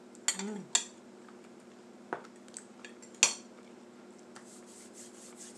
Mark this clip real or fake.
real